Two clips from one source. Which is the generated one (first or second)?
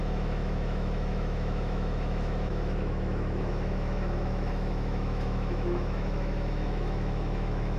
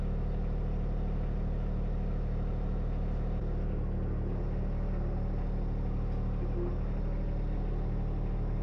first